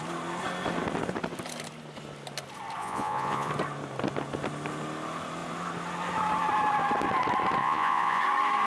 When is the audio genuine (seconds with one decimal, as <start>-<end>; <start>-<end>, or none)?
0.0-2.8; 3.5-7.6; 8.2-8.7